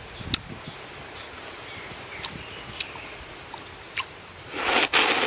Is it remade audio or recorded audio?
recorded